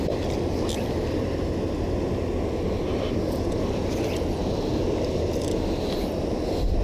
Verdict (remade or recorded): recorded